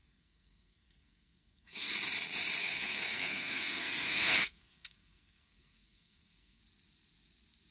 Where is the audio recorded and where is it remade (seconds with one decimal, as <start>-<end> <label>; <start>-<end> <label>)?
0.0-1.9 remade; 1.9-2.6 recorded; 2.6-6.6 remade; 6.6-7.7 recorded